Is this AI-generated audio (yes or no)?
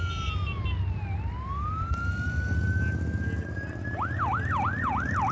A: no